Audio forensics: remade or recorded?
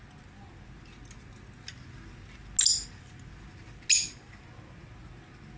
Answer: recorded